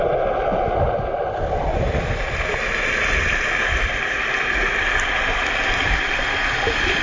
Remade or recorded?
remade